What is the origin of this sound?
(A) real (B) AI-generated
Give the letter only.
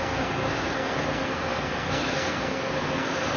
B